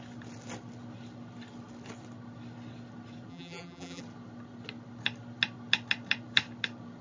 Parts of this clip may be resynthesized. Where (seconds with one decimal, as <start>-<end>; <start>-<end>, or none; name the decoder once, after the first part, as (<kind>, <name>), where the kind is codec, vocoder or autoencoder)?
3.3-4.0 (vocoder, BigVGAN v2)